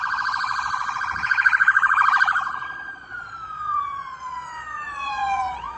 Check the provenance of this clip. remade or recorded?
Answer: remade